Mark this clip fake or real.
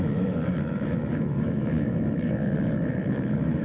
fake